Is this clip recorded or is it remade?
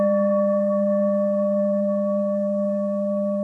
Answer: remade